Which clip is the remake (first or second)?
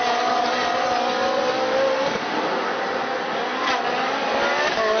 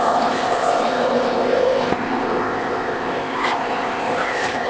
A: second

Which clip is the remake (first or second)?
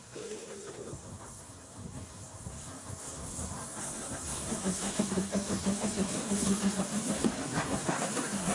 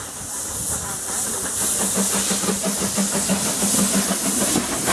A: first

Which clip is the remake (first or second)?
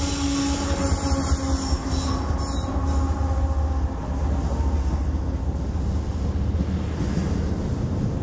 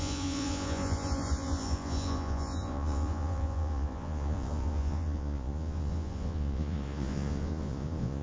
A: second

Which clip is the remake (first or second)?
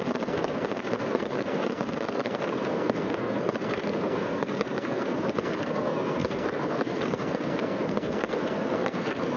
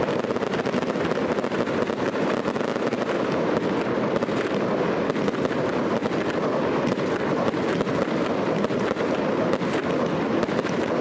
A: first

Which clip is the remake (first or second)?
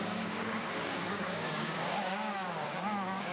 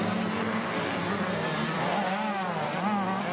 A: first